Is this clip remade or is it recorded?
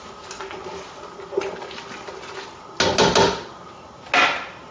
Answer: recorded